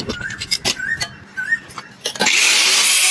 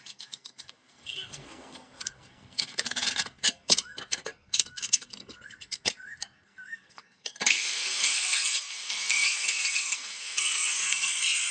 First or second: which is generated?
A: second